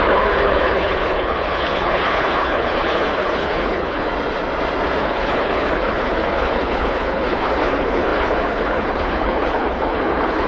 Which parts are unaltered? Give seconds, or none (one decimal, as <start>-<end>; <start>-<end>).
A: 4.1-5.0